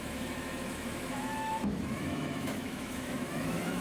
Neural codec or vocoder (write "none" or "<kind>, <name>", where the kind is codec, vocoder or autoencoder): autoencoder, DAC-VAE